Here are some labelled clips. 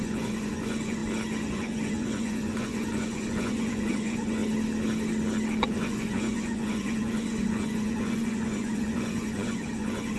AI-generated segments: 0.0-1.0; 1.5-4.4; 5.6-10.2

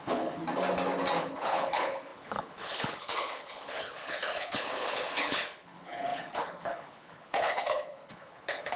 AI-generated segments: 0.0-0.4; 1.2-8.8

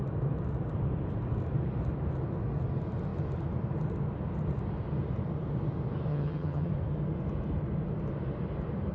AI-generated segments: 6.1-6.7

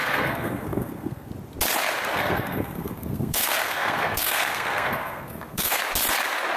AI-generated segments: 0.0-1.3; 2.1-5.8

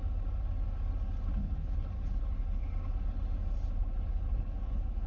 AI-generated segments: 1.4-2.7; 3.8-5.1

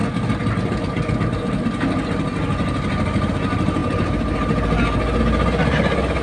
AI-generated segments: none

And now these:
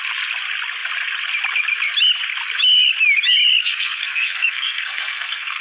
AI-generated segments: 3.6-5.6